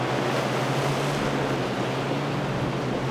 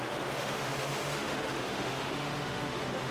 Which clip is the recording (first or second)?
first